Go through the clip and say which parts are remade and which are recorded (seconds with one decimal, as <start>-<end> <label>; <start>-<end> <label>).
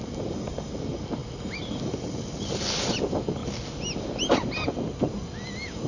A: 0.0-5.9 recorded